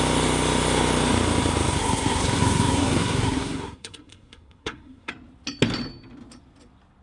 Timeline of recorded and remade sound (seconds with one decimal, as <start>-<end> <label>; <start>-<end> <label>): 0.0-1.8 recorded; 1.8-5.1 remade; 5.1-7.0 recorded